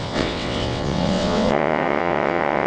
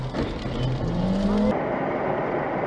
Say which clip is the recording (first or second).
second